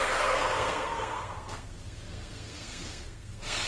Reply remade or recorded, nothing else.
remade